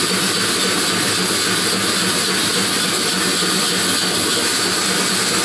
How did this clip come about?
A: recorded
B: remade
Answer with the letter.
A